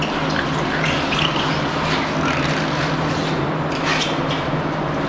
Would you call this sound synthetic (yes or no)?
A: no